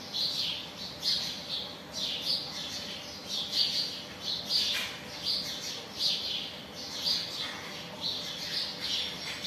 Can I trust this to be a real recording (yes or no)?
yes